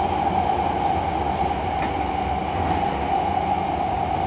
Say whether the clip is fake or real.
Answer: real